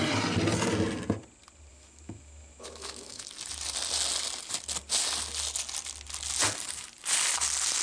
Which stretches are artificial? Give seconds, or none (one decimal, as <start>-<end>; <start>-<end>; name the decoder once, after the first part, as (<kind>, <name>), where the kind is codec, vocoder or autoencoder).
1.7-3.2 (autoencoder, DAC-VAE)